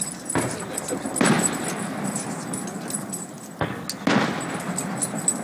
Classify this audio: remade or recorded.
recorded